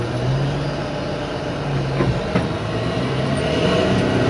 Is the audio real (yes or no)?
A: yes